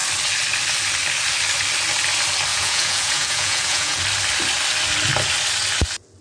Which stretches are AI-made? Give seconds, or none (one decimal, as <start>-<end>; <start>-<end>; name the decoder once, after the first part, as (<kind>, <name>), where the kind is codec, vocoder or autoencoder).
2.5-4.0 (vocoder, Vocos)